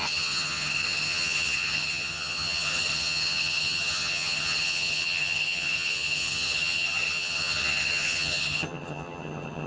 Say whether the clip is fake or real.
fake